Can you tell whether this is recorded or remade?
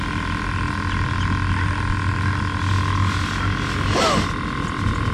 recorded